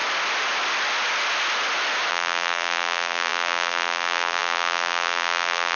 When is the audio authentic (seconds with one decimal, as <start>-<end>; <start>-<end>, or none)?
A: 0.0-2.1